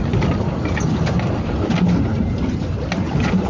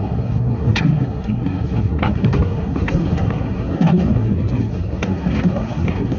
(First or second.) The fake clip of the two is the second